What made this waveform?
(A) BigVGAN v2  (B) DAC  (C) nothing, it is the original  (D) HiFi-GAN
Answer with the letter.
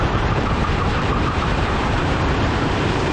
A